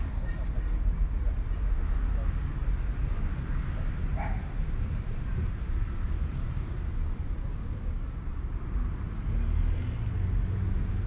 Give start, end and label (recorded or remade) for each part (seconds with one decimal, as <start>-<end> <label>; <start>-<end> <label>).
0.0-4.1 recorded; 4.1-8.3 remade; 8.3-11.1 recorded